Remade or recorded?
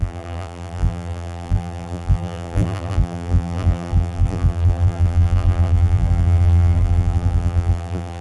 remade